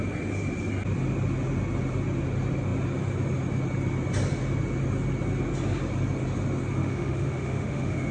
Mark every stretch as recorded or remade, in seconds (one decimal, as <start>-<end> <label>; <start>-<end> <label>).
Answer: 0.0-6.8 recorded; 6.8-8.1 remade